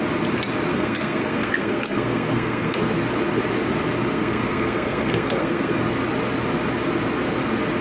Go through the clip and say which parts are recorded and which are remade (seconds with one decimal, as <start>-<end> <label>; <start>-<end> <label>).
0.0-0.7 recorded; 0.7-2.8 remade; 2.8-4.1 recorded; 4.1-5.8 remade; 5.8-7.8 recorded